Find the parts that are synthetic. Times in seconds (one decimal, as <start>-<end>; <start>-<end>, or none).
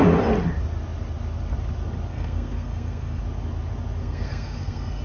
2.1-3.2; 4.0-5.0